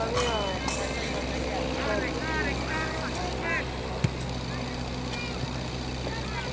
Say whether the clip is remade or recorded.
recorded